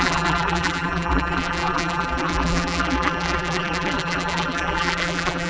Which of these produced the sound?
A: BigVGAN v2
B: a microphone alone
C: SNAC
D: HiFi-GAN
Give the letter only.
A